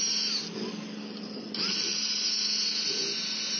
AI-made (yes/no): no